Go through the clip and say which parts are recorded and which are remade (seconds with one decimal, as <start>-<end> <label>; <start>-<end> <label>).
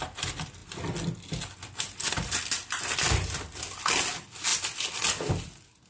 0.0-5.9 recorded